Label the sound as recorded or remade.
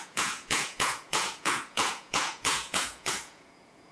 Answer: remade